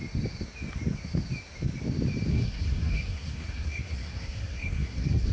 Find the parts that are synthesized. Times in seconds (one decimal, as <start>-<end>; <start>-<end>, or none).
2.3-5.3